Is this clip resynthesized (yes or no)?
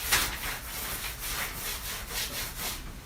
no